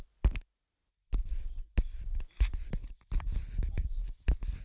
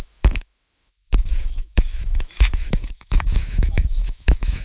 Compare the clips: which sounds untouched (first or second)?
first